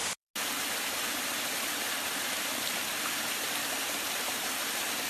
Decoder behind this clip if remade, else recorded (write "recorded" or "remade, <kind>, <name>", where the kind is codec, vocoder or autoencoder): recorded